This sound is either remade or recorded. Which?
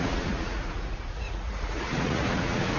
remade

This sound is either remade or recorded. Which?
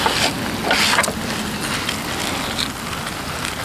recorded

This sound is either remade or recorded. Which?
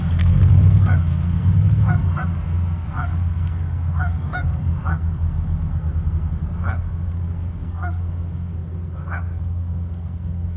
remade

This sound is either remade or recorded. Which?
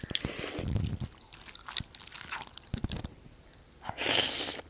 recorded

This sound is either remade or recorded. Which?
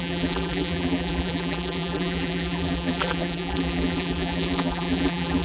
remade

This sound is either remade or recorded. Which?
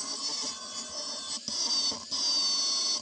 recorded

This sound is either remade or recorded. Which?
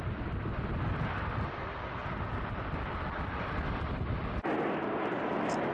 recorded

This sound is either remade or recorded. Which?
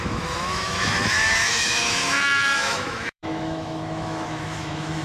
remade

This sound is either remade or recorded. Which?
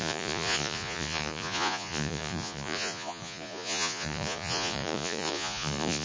remade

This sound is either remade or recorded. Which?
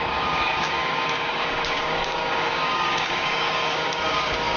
remade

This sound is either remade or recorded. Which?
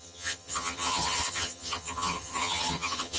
remade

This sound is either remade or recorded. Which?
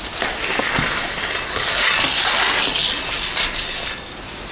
recorded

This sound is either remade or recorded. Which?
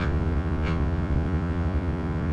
remade